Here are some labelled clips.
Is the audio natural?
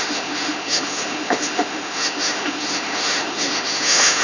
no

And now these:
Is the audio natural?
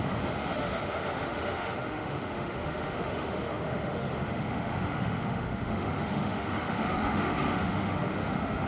no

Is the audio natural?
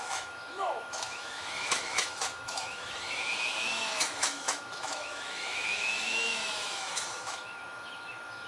no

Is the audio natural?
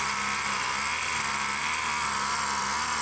yes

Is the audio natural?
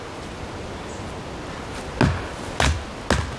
yes